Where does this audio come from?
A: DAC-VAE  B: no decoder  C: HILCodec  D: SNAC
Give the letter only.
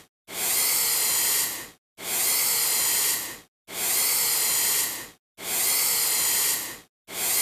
B